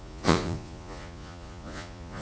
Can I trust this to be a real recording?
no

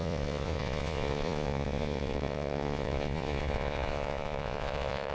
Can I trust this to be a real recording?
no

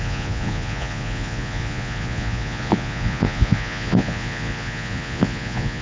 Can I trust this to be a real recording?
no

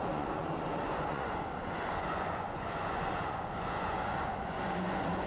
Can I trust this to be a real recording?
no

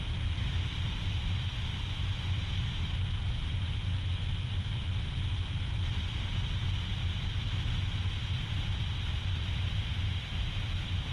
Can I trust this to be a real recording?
yes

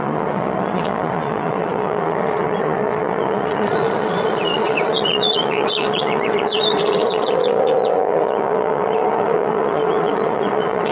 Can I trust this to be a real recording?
no